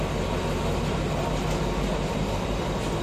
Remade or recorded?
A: recorded